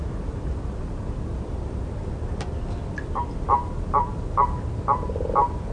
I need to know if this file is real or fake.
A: real